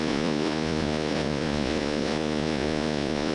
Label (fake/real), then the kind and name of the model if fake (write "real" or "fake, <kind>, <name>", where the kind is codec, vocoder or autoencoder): fake, vocoder, Vocos